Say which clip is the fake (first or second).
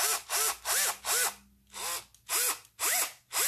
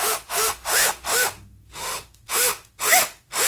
second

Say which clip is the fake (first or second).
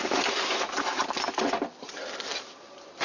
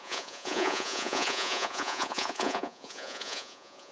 second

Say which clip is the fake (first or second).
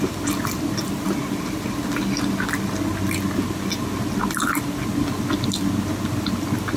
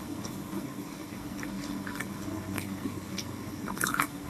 second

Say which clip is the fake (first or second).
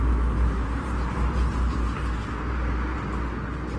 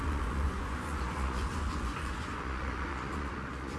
second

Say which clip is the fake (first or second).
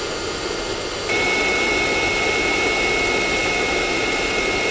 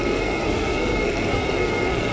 second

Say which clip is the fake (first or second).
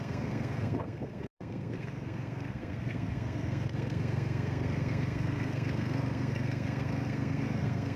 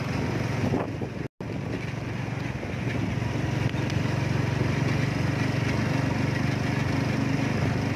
first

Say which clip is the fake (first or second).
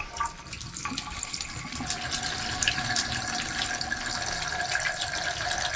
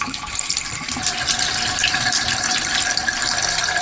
second